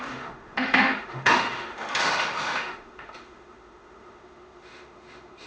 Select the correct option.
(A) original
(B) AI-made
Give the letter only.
B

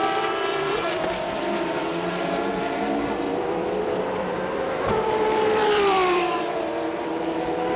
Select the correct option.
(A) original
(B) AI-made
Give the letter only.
B